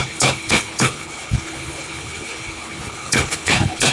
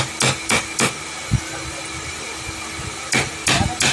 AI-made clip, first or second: first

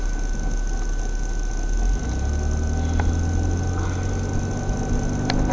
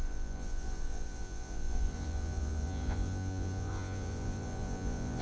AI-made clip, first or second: second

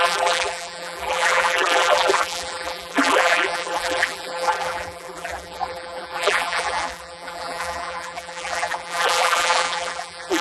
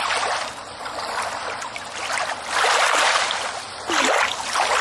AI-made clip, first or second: first